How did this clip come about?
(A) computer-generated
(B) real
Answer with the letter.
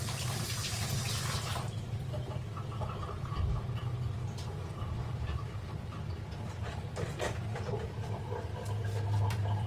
A